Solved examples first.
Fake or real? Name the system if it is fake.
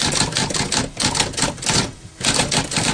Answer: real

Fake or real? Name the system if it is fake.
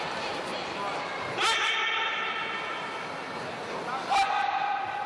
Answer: real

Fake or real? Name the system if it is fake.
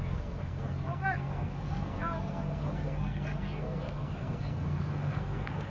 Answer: fake, codec, SNAC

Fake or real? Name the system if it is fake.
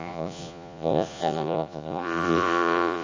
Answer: fake, vocoder, Vocos